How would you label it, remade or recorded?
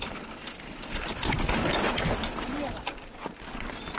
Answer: recorded